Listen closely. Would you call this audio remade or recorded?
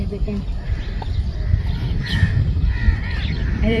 remade